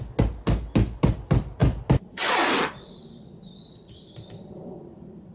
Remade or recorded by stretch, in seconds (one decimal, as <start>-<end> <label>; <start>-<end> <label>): 0.0-5.3 recorded